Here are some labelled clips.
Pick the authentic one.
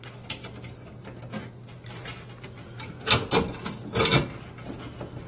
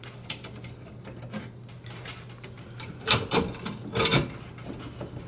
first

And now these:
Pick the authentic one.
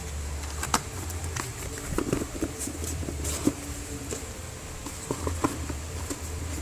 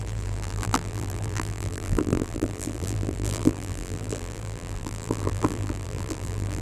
first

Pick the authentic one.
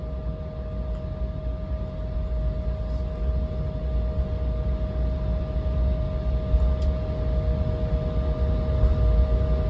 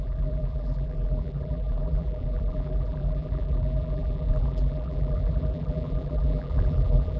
first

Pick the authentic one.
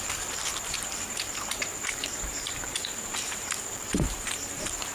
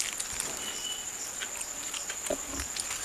second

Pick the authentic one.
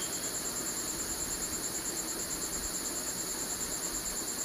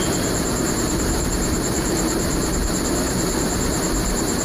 first